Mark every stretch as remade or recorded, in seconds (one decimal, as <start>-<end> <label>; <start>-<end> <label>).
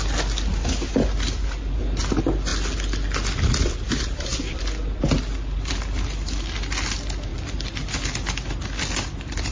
0.0-9.5 recorded